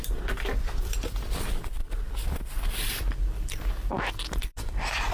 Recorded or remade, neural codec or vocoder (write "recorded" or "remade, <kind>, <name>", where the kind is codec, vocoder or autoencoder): remade, vocoder, BigVGAN v2